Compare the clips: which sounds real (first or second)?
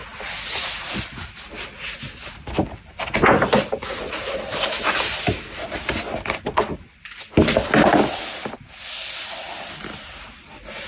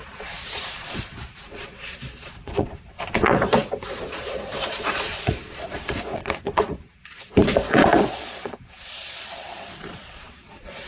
first